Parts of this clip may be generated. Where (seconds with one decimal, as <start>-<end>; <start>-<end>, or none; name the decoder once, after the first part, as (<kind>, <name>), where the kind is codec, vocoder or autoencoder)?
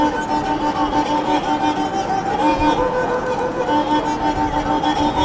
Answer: 2.5-3.6 (vocoder, Vocos)